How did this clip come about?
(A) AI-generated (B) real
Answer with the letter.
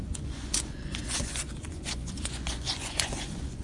A